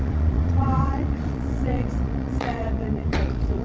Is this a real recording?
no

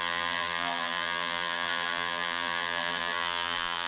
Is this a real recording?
no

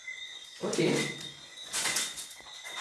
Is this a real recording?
no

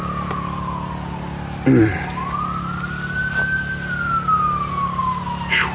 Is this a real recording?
yes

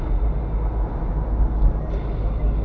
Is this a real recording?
yes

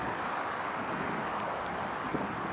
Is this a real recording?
no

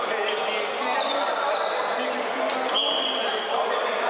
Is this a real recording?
yes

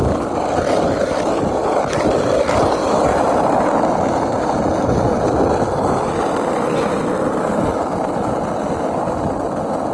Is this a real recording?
yes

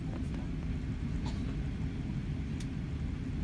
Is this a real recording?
yes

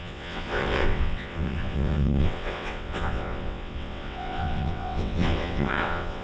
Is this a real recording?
no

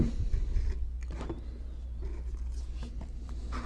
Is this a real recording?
yes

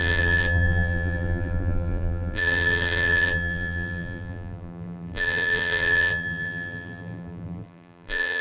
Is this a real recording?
no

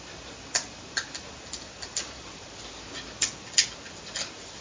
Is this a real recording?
yes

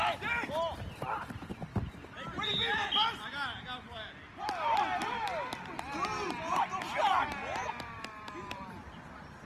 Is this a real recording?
yes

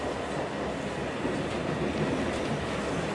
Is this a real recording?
yes